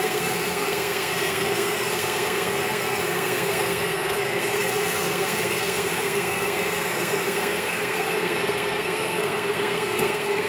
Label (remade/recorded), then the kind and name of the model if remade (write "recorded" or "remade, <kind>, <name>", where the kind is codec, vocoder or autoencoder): remade, codec, SNAC